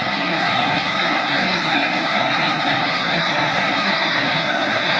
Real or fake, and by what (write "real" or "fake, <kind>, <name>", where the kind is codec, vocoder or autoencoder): fake, codec, SNAC